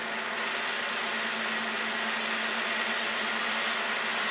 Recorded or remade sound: recorded